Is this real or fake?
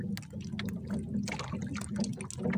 real